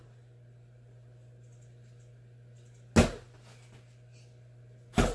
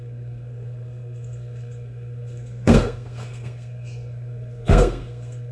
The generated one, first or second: second